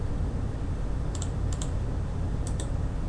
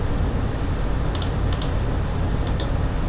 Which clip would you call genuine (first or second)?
second